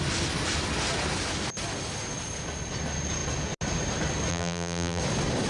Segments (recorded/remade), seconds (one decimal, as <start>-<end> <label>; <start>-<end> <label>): 0.0-4.3 recorded; 4.3-5.0 remade; 5.0-5.5 recorded